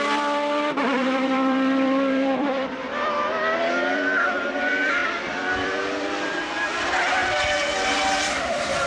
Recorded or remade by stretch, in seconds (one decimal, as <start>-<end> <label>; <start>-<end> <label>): 0.0-7.2 remade; 7.2-8.3 recorded; 8.3-8.9 remade